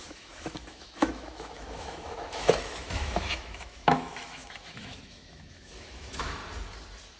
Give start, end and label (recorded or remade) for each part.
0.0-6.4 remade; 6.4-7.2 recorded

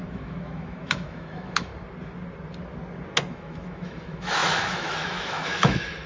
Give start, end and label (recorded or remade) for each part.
0.0-1.7 remade; 1.7-3.3 recorded; 3.3-6.1 remade

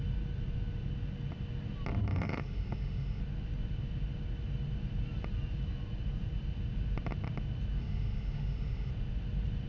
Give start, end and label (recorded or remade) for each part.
0.0-2.1 recorded; 2.1-3.2 remade; 3.2-7.8 recorded; 7.8-8.9 remade; 8.9-9.7 recorded

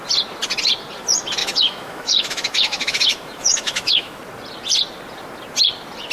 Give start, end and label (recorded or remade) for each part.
0.0-1.4 recorded; 1.4-4.2 remade; 4.2-6.1 recorded